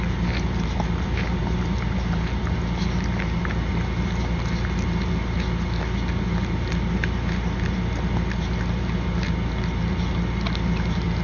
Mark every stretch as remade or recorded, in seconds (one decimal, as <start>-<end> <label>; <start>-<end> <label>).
0.0-11.2 recorded